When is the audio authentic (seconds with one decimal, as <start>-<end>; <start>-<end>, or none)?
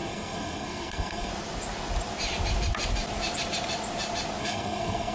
1.3-4.4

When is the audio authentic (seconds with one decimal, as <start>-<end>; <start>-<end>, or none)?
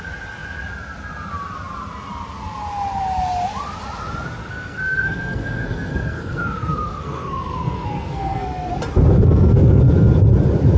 0.0-4.4; 8.7-9.1; 9.8-10.8